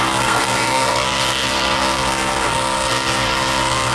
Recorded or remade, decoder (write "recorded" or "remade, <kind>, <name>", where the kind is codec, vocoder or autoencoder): remade, codec, SNAC